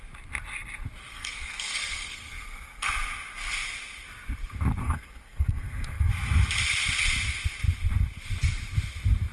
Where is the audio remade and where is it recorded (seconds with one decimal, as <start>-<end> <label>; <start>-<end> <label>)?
0.0-1.1 recorded; 1.1-2.9 remade; 2.9-4.8 recorded; 4.8-6.1 remade; 6.1-9.3 recorded